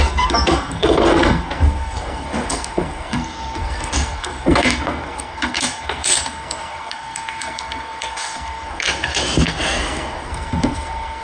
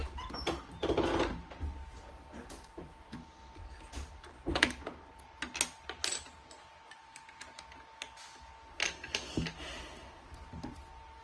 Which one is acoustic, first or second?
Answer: second